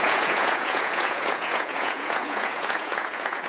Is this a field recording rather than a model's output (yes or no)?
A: no